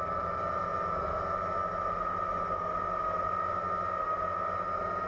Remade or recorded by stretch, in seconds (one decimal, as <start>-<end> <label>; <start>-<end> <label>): 0.0-5.1 recorded